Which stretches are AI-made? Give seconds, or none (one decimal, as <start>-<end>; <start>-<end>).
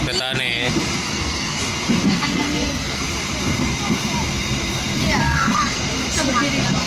1.0-1.6; 2.0-3.0; 5.2-5.8